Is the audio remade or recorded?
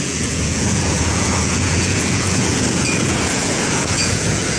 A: remade